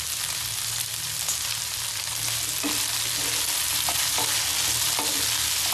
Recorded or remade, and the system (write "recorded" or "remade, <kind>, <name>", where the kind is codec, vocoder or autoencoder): recorded